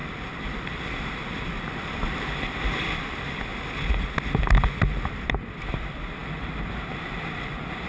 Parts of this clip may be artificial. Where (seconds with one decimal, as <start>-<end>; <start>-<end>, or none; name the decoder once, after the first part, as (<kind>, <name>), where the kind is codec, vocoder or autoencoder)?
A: 0.0-3.5 (vocoder, BigVGAN v2); 5.4-7.9